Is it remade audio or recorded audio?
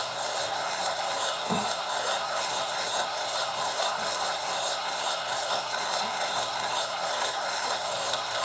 remade